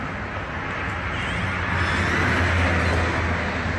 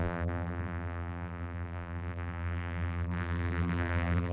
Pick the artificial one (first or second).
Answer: second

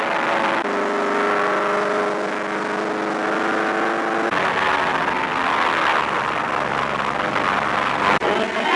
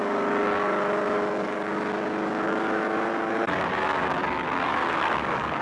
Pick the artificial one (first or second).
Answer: second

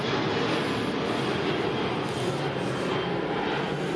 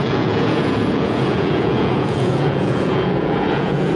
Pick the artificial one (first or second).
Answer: second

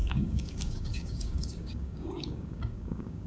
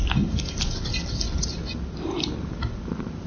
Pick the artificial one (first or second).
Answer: first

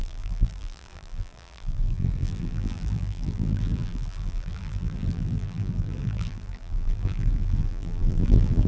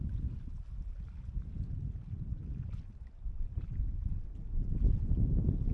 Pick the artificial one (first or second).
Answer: first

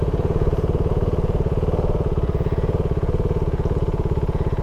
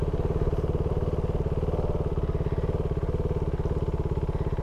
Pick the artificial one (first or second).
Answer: first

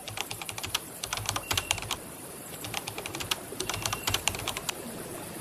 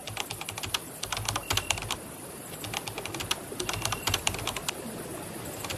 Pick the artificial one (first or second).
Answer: first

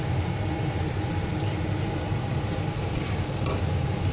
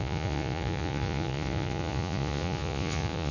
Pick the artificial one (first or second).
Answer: second